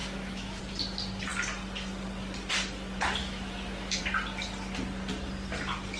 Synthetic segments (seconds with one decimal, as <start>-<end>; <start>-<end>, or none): 0.0-0.6; 3.2-4.0